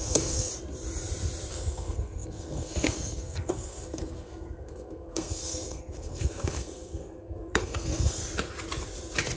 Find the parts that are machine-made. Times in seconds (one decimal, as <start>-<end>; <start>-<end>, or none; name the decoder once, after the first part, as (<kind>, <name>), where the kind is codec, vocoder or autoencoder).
0.0-0.5 (codec, SNAC); 1.5-8.2